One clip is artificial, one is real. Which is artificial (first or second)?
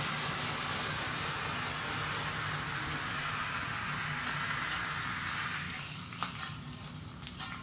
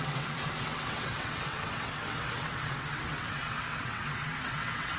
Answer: second